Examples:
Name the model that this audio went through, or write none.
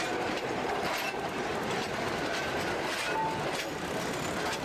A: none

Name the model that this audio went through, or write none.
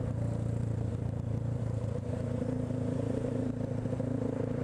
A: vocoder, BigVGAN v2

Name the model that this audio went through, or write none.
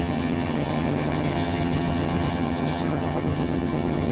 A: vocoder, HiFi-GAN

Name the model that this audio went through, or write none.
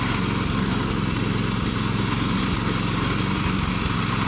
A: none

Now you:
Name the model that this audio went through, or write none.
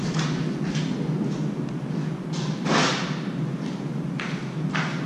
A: none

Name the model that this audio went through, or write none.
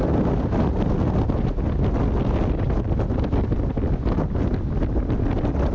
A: none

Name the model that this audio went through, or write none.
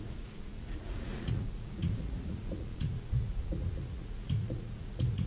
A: vocoder, Vocos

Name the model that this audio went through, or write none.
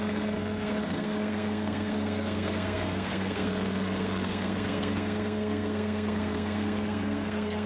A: codec, SNAC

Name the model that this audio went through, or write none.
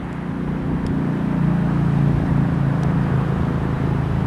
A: none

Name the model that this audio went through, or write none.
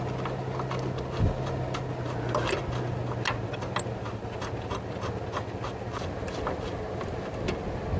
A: none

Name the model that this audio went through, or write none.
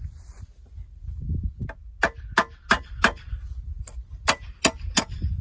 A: none